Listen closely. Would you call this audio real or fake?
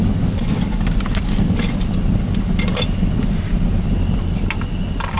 real